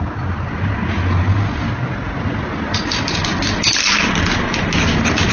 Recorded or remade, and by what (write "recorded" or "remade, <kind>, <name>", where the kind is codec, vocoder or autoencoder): recorded